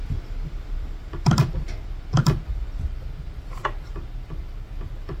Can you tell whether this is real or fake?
real